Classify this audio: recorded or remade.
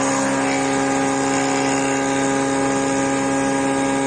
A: recorded